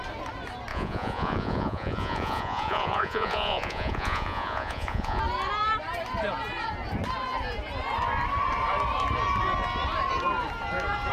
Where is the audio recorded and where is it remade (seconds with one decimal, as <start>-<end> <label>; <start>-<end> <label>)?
0.0-0.7 recorded; 0.7-5.2 remade; 5.2-11.1 recorded